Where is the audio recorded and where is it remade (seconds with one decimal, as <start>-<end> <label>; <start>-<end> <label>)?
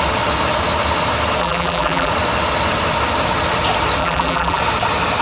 0.0-1.4 recorded; 1.4-2.1 remade; 2.1-4.0 recorded; 4.0-4.6 remade; 4.6-5.2 recorded